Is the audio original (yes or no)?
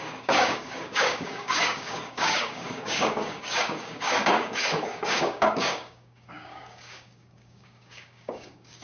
no